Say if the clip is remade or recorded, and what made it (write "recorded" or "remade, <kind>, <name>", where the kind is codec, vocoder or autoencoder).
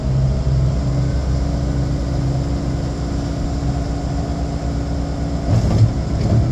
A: recorded